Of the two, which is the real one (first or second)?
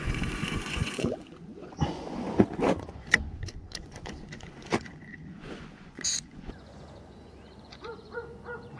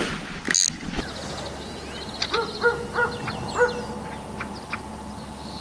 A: second